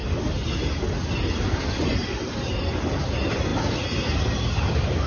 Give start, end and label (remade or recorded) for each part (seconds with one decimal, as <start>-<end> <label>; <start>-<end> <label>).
0.0-5.1 recorded